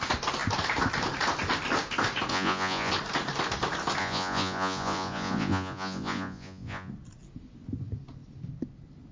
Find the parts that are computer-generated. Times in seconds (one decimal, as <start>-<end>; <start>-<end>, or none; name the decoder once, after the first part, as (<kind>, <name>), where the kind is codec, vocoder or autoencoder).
2.3-2.9 (vocoder, Vocos); 4.0-6.9